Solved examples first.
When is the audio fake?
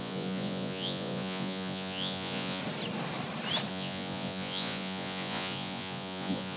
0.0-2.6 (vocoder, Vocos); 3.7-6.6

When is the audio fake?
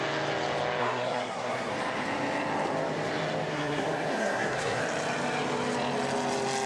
0.8-1.7 (codec, SNAC); 3.5-4.8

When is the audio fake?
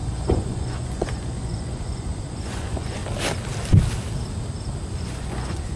0.0-3.0 (vocoder, Vocos); 5.0-5.8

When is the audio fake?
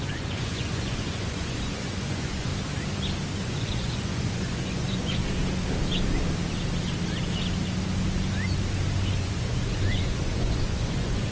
0.0-2.5 (vocoder, Vocos); 3.4-5.2; 9.2-11.3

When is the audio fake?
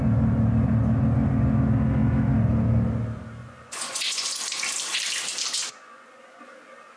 3.4-4.4 (vocoder, Vocos); 5.6-6.4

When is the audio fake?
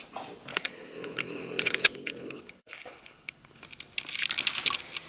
0.5-3.6 (codec, HILCodec)